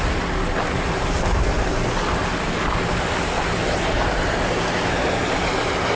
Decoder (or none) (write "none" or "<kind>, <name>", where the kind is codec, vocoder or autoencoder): none